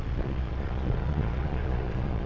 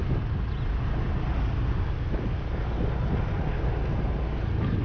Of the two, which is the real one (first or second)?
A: second